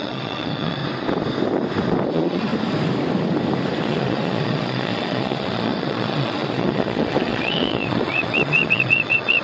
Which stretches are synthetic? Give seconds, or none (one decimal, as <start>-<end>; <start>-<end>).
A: 0.0-0.8; 2.1-2.5; 3.8-9.4